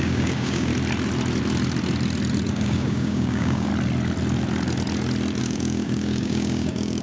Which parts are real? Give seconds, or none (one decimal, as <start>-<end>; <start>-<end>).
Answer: 0.7-2.5; 3.7-5.4